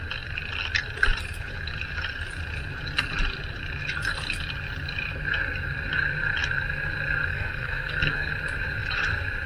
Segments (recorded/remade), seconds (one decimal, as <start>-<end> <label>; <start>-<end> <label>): 0.0-7.3 recorded; 7.3-8.3 remade; 8.3-9.5 recorded

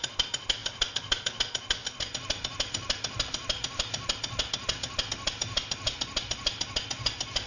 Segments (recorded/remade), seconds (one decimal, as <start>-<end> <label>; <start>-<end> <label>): 0.0-7.5 recorded

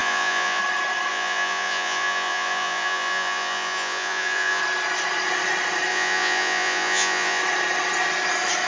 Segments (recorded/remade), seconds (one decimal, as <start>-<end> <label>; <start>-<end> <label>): 0.0-0.6 remade; 0.6-1.1 recorded; 1.1-4.6 remade; 4.6-5.9 recorded; 5.9-7.4 remade; 7.4-8.7 recorded

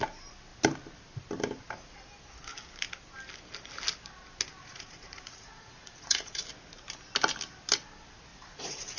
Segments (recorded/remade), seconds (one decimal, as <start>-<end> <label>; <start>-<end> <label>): 0.0-4.6 recorded; 4.6-6.4 remade; 6.4-8.3 recorded; 8.3-9.0 remade

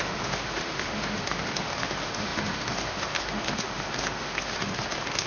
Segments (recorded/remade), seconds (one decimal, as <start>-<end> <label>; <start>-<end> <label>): 0.0-5.3 remade

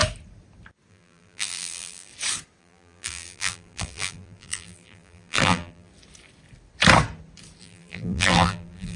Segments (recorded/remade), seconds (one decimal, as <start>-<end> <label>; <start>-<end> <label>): 0.0-0.9 recorded; 0.9-2.1 remade; 2.1-2.6 recorded; 2.6-5.9 remade; 5.9-7.6 recorded; 7.6-9.0 remade

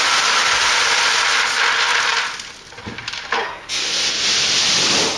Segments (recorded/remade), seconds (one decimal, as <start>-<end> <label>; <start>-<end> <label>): 0.0-3.4 recorded; 3.4-4.1 remade; 4.1-5.2 recorded